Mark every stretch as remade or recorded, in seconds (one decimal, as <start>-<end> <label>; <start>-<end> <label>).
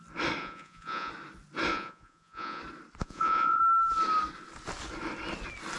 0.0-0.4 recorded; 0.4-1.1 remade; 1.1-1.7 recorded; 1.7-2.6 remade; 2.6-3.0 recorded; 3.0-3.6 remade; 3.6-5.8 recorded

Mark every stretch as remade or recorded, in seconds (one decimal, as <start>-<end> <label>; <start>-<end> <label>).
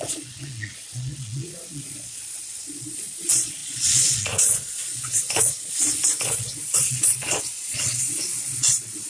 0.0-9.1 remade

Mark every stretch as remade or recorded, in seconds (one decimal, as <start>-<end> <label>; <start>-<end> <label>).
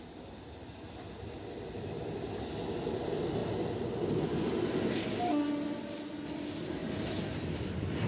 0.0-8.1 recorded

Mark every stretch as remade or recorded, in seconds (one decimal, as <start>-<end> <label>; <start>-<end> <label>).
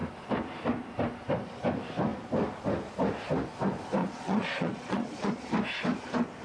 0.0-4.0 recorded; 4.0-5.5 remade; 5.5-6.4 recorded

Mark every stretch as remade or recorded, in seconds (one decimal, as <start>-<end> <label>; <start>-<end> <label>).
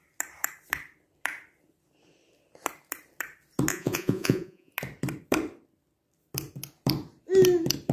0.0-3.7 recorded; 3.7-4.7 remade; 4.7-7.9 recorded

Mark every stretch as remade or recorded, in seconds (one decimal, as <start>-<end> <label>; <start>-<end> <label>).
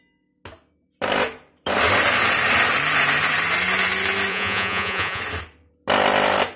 0.0-4.3 recorded; 4.3-5.2 remade; 5.2-6.6 recorded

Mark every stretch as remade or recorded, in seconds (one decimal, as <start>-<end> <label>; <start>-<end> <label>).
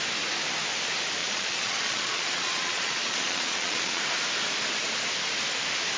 0.0-1.2 recorded; 1.2-4.0 remade; 4.0-6.0 recorded